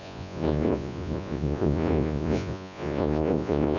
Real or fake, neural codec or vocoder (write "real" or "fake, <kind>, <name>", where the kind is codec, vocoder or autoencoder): fake, vocoder, Vocos